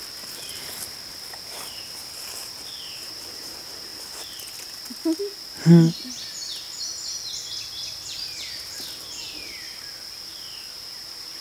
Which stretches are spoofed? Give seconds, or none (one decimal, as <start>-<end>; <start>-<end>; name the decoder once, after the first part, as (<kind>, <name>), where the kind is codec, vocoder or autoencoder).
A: none